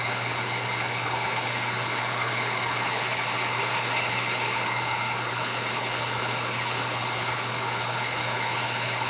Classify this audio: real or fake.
fake